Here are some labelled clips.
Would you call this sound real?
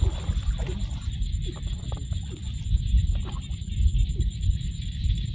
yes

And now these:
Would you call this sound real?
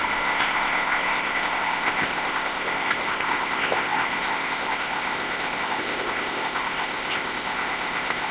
no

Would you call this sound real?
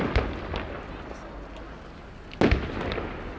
yes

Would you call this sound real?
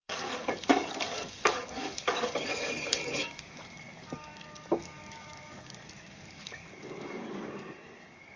no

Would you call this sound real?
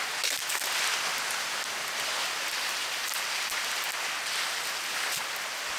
yes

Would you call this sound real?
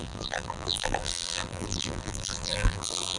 no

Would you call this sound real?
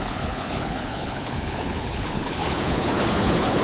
no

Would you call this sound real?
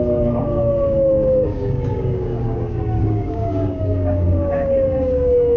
no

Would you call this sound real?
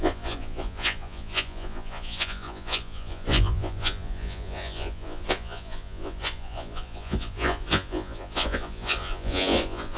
no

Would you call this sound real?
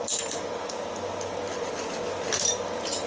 yes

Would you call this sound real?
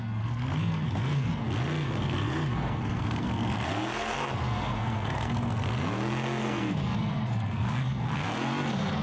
no